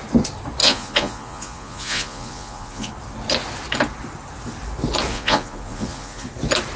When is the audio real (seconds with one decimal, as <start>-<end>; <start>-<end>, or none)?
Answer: 0.0-0.6; 2.9-5.1; 6.3-6.8